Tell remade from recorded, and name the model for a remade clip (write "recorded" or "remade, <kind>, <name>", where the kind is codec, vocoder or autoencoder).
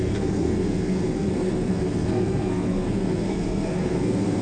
remade, codec, SNAC